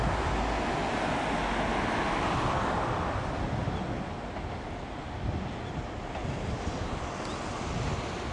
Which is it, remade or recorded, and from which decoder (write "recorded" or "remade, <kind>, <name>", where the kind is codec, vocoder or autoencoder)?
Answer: recorded